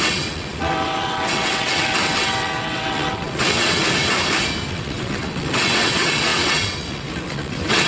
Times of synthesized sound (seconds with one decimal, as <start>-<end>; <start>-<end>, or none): 0.0-3.8; 4.7-7.9